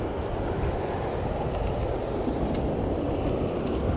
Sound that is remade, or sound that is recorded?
recorded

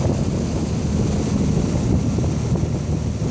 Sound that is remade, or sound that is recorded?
recorded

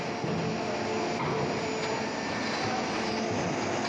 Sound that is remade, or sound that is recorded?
recorded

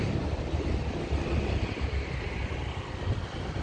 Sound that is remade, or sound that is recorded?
recorded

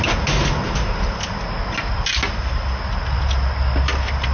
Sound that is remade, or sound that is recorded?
recorded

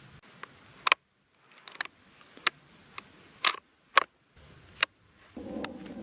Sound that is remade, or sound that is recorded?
recorded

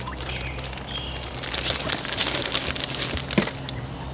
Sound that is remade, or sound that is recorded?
recorded